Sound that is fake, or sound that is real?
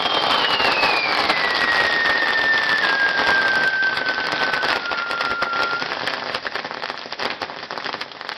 real